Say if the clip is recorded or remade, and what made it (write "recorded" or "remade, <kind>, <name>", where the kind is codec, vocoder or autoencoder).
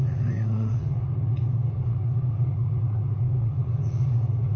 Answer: remade, vocoder, Vocos